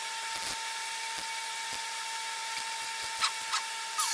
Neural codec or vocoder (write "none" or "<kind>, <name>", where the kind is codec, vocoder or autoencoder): none